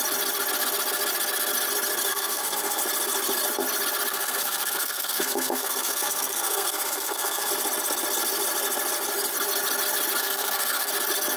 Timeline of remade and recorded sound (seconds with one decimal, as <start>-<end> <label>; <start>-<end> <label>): 0.0-2.1 recorded; 2.1-2.8 remade; 2.8-4.1 recorded; 4.1-7.5 remade; 7.5-10.2 recorded; 10.2-10.9 remade; 10.9-11.4 recorded